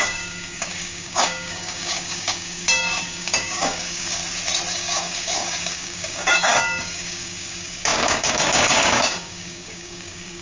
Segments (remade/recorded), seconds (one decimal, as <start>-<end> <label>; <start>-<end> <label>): 0.0-4.2 remade; 4.2-4.7 recorded; 4.7-10.4 remade

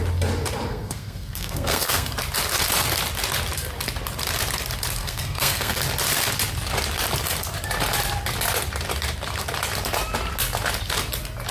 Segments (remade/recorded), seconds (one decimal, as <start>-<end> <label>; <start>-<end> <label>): 0.0-0.7 recorded; 0.7-2.1 remade; 2.1-5.0 recorded; 5.0-5.8 remade; 5.8-11.5 recorded

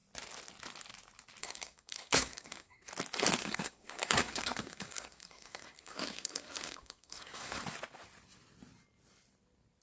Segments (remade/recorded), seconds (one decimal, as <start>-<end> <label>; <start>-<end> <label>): 0.0-1.4 recorded; 1.4-2.9 remade; 2.9-3.4 recorded; 3.4-7.6 remade; 7.6-9.8 recorded

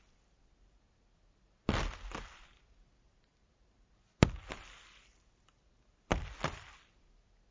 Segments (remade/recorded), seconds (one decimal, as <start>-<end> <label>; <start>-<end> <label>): 0.0-7.5 recorded

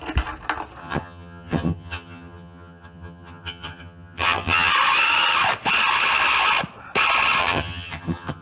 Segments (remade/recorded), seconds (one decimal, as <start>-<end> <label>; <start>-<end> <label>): 0.0-0.8 recorded; 0.8-4.7 remade; 4.7-7.4 recorded; 7.4-8.4 remade

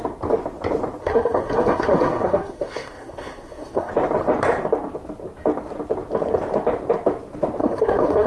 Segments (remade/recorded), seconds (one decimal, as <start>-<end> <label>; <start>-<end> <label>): 0.0-1.0 recorded; 1.0-3.9 remade; 3.9-7.6 recorded; 7.6-8.3 remade

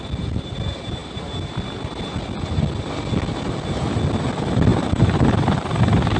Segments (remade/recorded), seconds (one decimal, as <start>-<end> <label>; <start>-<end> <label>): 0.0-4.7 recorded; 4.7-5.8 remade; 5.8-6.2 recorded

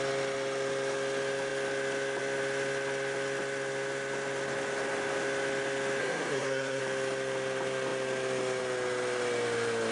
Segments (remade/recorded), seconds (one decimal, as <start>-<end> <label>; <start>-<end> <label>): 0.0-6.0 recorded; 6.0-6.8 remade; 6.8-9.9 recorded